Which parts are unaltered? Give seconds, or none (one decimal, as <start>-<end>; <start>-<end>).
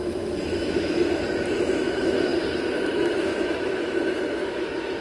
1.0-1.6